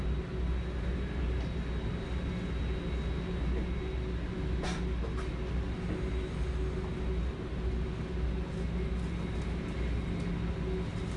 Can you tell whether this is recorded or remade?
recorded